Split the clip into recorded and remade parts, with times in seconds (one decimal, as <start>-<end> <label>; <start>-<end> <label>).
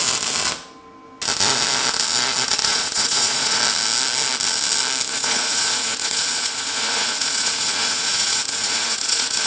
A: 0.0-2.6 recorded; 2.6-3.6 remade; 3.6-5.1 recorded; 5.1-9.5 remade